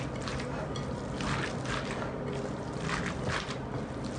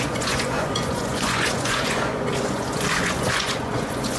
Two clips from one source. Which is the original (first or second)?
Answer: first